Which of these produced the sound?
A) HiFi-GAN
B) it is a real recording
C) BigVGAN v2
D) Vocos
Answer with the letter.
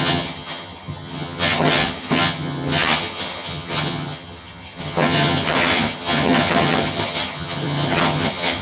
A